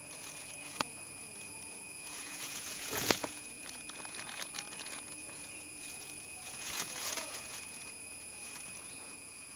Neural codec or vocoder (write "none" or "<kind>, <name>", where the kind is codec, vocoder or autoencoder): vocoder, Vocos